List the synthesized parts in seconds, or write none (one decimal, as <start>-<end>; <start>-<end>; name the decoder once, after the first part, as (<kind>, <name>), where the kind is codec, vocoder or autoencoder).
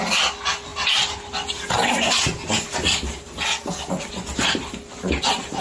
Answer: none